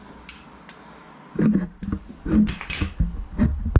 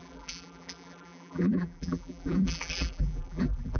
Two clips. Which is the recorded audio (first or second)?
first